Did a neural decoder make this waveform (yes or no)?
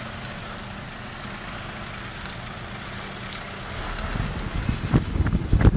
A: no